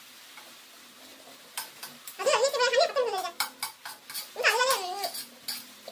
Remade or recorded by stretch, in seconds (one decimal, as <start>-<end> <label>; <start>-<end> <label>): 0.0-5.9 recorded